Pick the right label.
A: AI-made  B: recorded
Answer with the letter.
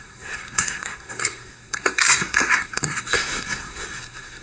A